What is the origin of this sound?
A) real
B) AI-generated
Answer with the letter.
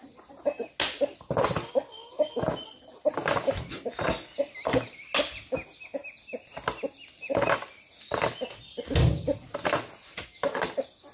A